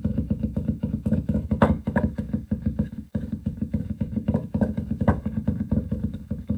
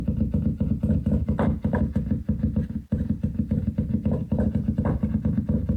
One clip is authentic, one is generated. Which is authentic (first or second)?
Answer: second